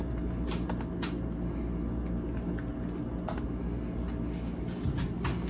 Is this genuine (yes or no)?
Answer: yes